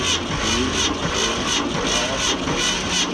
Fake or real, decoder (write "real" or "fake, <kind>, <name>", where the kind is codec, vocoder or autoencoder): real